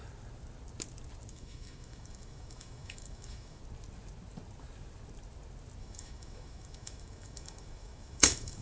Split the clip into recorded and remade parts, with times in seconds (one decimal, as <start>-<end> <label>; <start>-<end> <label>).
0.0-1.3 recorded; 1.3-3.6 remade; 3.6-5.8 recorded; 5.8-8.6 remade